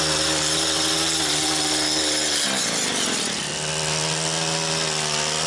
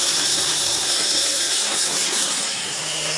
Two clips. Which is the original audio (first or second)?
first